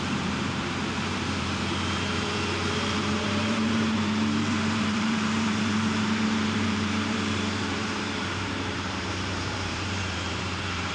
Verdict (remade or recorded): remade